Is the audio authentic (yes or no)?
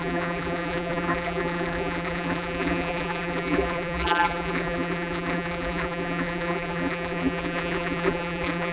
no